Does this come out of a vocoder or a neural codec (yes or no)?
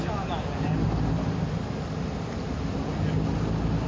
no